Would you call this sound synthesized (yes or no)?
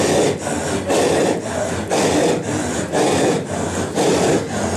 no